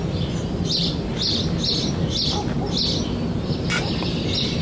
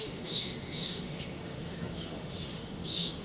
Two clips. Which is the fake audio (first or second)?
second